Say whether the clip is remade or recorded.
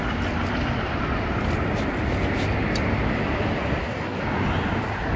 recorded